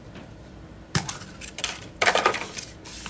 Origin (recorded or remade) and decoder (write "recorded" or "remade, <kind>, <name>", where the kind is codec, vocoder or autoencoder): remade, vocoder, BigVGAN v2